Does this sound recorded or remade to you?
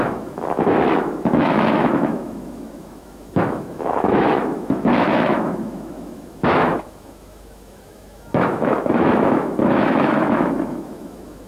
remade